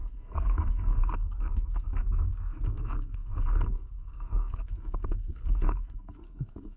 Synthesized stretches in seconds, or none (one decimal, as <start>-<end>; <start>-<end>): 0.0-6.8